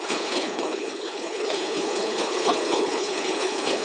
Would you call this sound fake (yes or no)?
yes